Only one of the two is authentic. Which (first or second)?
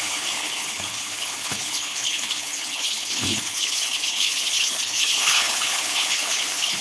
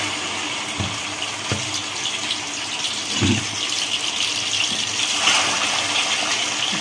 second